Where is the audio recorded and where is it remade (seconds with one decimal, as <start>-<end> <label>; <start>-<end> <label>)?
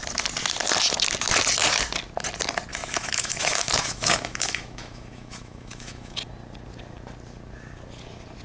0.0-2.7 recorded; 2.7-6.2 remade; 6.2-8.4 recorded